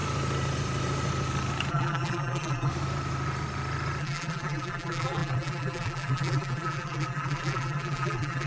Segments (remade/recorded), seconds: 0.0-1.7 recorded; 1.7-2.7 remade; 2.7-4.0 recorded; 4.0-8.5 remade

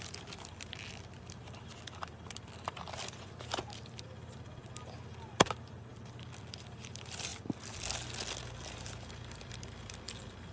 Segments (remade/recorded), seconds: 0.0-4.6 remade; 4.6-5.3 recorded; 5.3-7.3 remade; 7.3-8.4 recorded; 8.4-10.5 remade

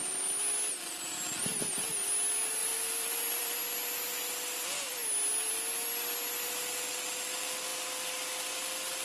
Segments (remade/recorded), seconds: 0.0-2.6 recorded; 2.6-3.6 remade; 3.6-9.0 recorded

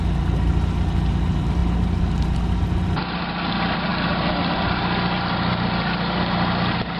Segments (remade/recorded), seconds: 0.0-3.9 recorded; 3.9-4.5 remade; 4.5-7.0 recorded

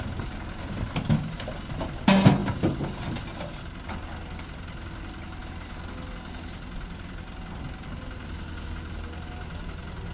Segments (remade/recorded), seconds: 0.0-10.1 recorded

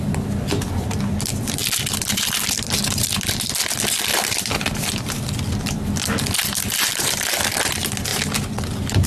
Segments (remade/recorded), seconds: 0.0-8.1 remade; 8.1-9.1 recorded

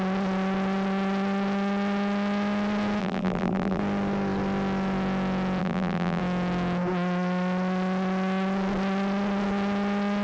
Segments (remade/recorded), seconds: 0.0-3.0 recorded; 3.0-3.8 remade; 3.8-5.6 recorded; 5.6-6.2 remade; 6.2-10.2 recorded

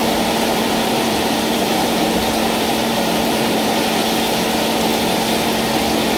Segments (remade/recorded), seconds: 0.0-3.7 remade; 3.7-6.2 recorded